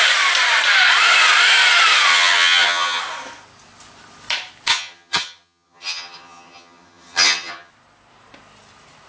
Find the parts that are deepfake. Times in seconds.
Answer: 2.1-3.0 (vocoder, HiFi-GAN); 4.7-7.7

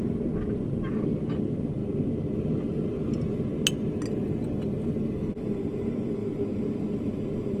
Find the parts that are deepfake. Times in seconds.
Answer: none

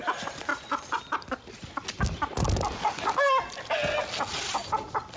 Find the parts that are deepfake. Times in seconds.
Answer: 0.5-1.0 (vocoder, Vocos)

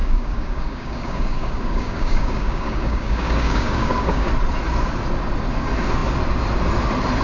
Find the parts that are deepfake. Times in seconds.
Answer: 0.0-4.3 (codec, DAC)

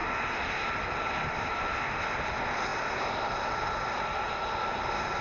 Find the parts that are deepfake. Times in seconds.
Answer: none